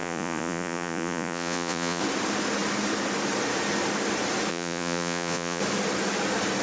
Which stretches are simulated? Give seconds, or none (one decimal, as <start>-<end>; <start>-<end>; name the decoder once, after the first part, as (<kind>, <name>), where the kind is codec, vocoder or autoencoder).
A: 0.0-2.0 (vocoder, Vocos); 4.5-5.6